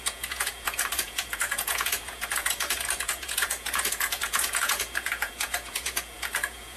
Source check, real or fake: fake